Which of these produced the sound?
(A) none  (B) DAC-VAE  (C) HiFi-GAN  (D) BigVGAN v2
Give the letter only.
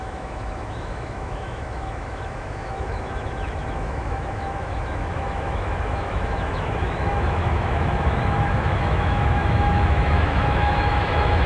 B